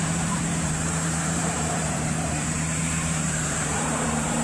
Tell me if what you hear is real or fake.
fake